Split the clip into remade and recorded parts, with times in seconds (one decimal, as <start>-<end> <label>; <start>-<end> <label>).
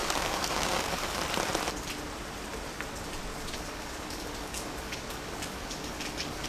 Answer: 0.0-1.2 remade; 1.2-3.3 recorded; 3.3-6.5 remade